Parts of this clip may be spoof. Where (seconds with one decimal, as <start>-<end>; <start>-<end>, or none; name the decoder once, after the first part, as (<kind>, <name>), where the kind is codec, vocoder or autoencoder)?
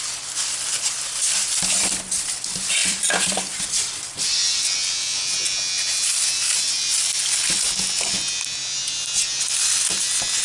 2.8-3.6 (vocoder, BigVGAN v2)